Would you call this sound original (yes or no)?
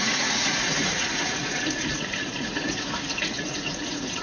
no